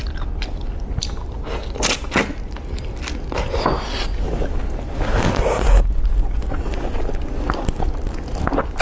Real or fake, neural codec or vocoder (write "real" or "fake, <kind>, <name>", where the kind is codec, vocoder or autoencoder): real